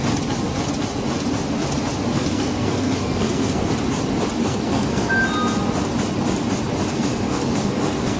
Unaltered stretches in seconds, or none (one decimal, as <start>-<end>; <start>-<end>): 0.0-2.1; 3.7-4.4; 5.1-6.9